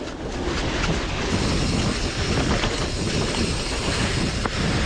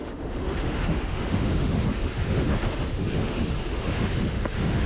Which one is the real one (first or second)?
first